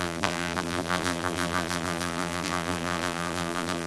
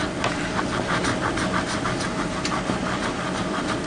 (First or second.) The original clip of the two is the second